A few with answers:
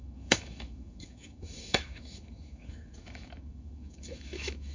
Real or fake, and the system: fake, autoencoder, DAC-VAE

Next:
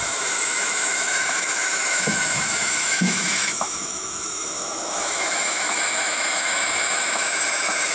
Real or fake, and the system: fake, autoencoder, DAC-VAE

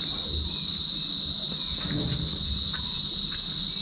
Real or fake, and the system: real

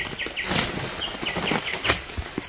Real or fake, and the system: real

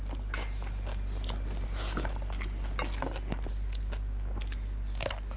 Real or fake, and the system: real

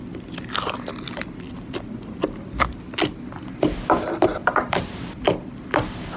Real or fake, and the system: real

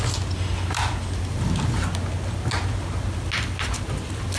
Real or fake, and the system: real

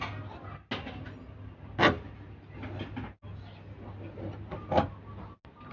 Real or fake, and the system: real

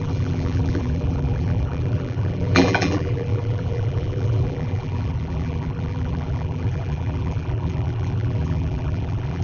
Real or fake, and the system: fake, vocoder, BigVGAN v2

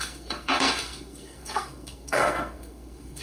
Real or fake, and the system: fake, codec, SNAC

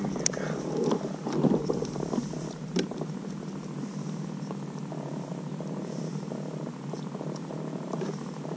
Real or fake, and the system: real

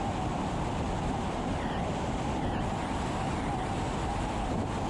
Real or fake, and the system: real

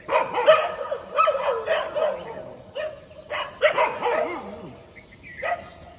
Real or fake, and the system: real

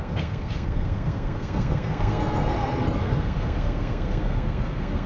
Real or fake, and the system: fake, codec, SNAC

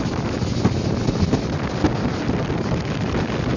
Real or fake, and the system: real